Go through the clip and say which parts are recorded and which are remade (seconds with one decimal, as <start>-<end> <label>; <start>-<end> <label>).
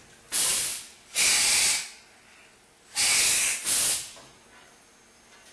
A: 0.0-5.5 recorded